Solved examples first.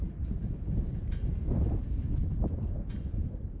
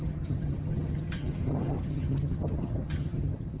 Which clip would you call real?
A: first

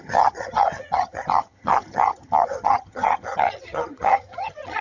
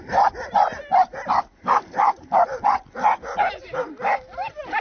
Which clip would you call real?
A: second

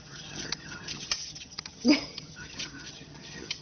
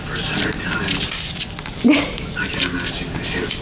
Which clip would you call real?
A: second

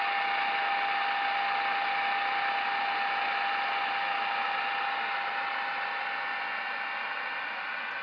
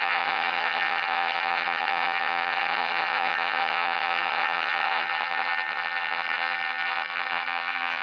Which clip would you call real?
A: first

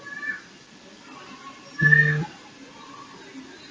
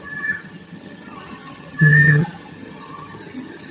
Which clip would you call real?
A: first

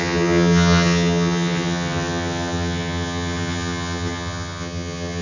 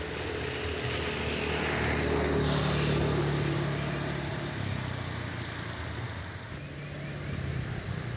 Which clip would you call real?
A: second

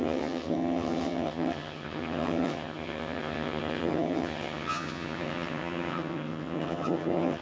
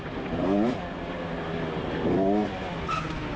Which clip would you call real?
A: second